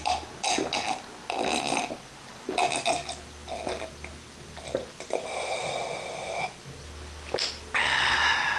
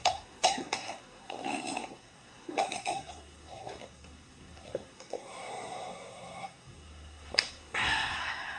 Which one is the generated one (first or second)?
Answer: second